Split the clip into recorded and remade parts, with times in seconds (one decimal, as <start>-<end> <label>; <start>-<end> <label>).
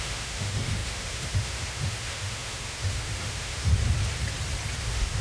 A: 0.0-3.7 remade; 3.7-4.8 recorded; 4.8-5.2 remade